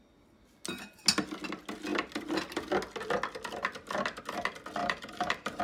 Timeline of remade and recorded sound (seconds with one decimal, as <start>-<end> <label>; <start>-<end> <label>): 0.0-4.8 recorded; 4.8-5.6 remade